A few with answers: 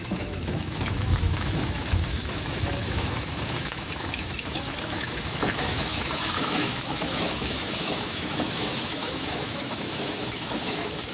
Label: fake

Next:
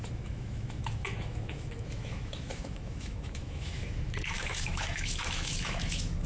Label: fake